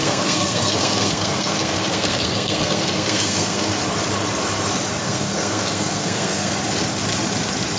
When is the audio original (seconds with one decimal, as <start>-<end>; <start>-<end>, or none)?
3.8-5.0; 6.5-7.8